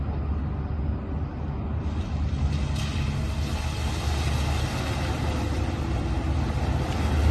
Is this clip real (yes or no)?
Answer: yes